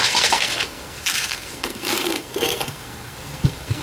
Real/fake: fake